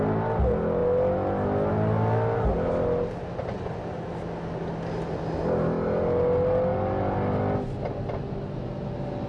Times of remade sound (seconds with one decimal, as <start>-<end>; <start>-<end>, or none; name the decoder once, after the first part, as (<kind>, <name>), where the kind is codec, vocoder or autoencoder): none